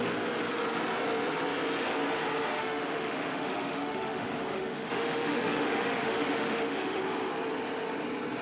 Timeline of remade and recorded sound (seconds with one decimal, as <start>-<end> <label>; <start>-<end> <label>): 0.0-2.6 recorded; 2.6-7.0 remade; 7.0-8.4 recorded